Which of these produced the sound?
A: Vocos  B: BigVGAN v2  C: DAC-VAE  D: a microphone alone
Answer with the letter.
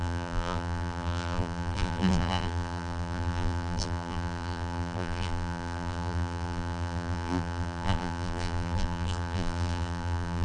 B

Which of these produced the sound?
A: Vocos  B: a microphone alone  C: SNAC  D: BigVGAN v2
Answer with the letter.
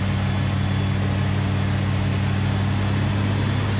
B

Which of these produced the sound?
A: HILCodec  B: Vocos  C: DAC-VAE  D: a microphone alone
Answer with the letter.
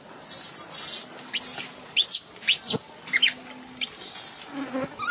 D